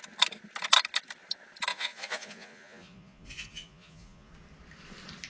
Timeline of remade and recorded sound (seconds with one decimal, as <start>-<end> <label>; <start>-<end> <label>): 0.0-1.7 recorded; 1.7-4.3 remade; 4.3-5.3 recorded